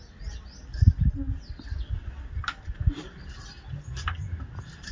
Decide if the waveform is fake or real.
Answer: real